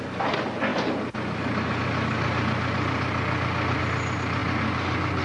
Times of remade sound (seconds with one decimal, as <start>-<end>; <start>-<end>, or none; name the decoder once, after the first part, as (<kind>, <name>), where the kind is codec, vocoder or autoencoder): none